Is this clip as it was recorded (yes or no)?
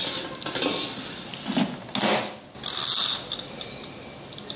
yes